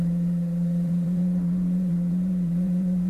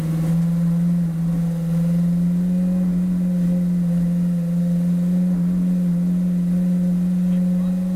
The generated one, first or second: first